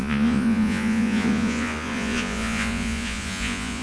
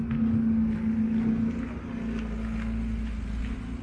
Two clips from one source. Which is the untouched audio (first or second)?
second